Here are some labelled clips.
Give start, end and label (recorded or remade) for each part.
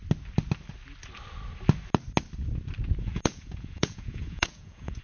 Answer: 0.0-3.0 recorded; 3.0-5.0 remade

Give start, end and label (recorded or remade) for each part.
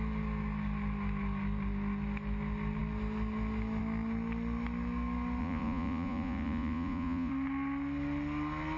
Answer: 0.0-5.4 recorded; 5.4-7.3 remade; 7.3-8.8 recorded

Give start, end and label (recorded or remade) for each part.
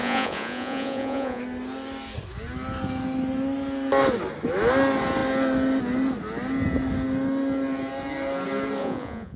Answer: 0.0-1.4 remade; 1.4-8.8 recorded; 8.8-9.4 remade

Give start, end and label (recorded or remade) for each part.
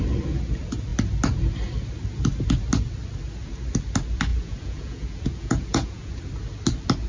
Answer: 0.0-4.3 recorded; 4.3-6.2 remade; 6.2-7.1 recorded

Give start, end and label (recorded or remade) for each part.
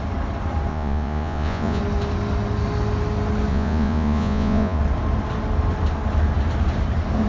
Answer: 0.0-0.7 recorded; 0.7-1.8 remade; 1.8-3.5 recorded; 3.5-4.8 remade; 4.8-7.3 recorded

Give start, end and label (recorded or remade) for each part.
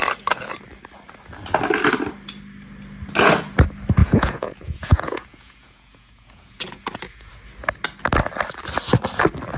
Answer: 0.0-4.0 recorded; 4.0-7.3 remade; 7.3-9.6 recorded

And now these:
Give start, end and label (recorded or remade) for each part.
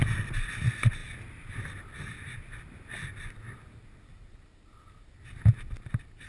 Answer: 0.0-6.3 recorded